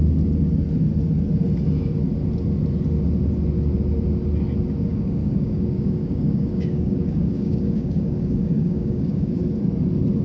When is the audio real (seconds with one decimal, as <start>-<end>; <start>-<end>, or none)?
0.0-4.9; 9.4-10.2